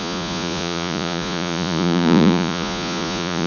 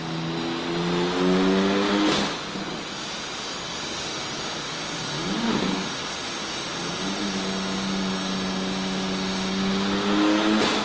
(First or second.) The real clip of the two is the second